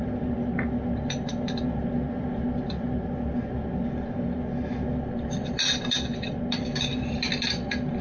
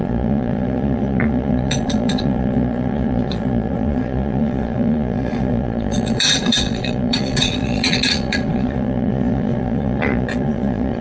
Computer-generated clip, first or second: second